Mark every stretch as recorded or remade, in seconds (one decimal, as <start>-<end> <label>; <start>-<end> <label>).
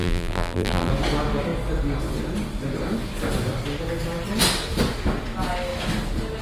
0.0-0.9 remade; 0.9-6.4 recorded